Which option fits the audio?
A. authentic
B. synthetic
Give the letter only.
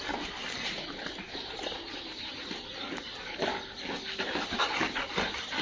A